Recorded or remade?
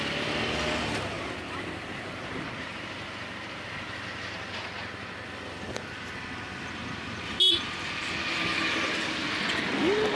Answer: recorded